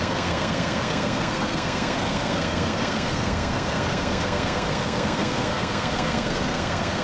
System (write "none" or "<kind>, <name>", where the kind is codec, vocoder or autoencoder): codec, SNAC